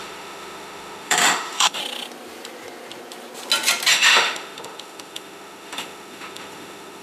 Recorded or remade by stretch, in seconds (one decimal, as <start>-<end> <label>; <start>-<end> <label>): 0.0-1.8 remade; 1.8-3.9 recorded; 3.9-7.0 remade